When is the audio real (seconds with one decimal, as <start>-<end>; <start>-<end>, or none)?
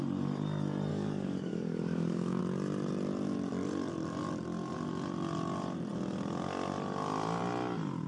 0.0-0.9; 2.4-8.1